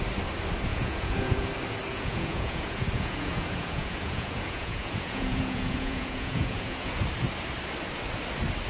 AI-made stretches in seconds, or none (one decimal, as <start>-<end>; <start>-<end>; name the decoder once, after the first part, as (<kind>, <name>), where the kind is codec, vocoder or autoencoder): 0.7-1.5 (vocoder, Vocos); 1.9-6.9